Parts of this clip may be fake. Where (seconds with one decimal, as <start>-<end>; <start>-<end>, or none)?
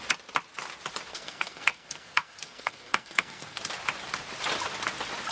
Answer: 1.1-3.6